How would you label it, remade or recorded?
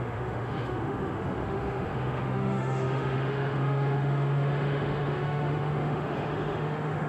remade